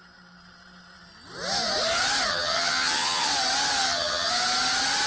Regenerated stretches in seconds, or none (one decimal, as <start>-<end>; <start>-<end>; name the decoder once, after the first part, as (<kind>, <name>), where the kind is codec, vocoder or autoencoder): 2.3-3.3 (vocoder, HiFi-GAN); 3.8-4.3